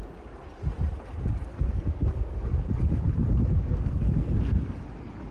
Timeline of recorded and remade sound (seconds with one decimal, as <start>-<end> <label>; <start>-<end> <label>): 0.0-1.5 recorded; 1.5-2.4 remade; 2.4-3.4 recorded; 3.4-4.8 remade; 4.8-5.3 recorded

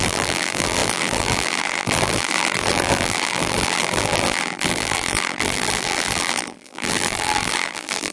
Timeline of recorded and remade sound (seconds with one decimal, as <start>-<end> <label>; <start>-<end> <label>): 0.0-8.1 remade